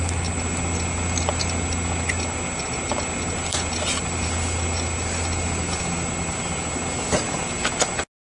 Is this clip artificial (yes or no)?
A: no